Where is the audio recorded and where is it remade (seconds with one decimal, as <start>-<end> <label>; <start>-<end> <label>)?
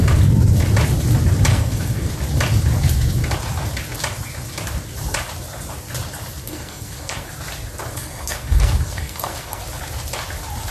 0.0-1.5 recorded; 1.5-2.1 remade; 2.1-6.4 recorded; 6.4-7.3 remade; 7.3-7.9 recorded; 7.9-9.6 remade; 9.6-10.7 recorded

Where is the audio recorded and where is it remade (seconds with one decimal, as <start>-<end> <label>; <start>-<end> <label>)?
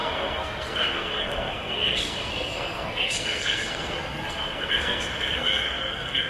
0.0-6.3 remade